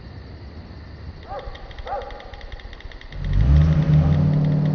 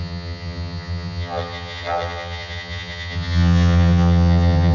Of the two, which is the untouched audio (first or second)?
first